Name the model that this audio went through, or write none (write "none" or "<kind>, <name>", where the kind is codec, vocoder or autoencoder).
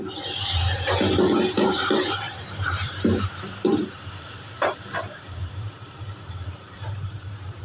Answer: vocoder, BigVGAN v2